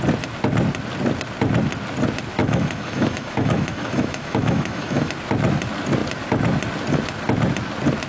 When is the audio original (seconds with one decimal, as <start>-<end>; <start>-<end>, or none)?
0.0-2.4; 5.1-8.1